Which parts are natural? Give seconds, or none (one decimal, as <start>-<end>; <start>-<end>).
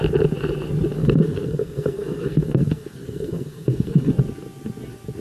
0.0-1.0; 4.1-5.2